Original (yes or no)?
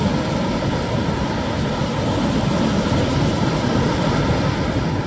yes